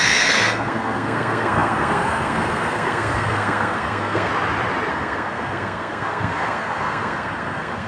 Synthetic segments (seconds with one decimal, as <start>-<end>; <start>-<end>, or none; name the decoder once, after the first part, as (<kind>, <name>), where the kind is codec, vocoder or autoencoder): 0.0-4.3 (codec, SNAC); 4.9-7.9